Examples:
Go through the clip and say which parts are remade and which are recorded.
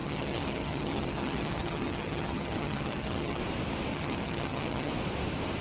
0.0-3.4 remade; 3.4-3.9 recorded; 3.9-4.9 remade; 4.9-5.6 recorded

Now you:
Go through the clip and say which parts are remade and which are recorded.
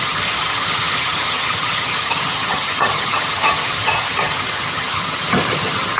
0.0-6.0 remade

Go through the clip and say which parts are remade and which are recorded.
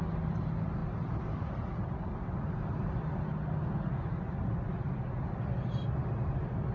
0.0-6.7 recorded